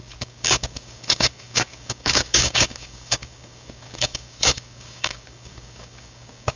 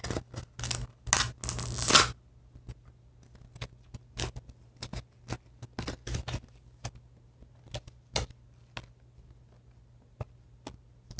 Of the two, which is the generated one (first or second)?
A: first